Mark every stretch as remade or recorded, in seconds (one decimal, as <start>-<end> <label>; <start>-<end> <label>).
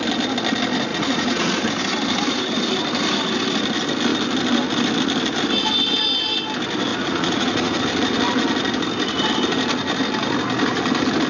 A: 0.0-0.9 recorded; 0.9-1.6 remade; 1.6-6.9 recorded; 6.9-7.8 remade; 7.8-11.3 recorded